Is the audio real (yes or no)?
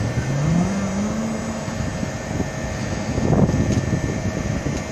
yes